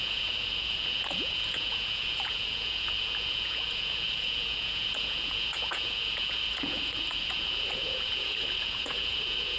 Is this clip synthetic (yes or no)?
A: yes